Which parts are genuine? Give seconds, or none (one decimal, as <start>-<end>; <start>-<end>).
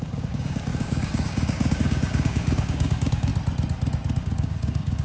3.3-4.2